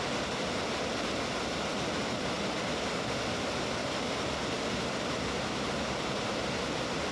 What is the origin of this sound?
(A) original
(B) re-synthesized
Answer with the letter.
A